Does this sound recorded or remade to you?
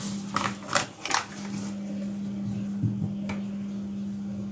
recorded